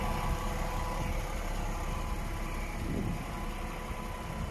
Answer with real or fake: real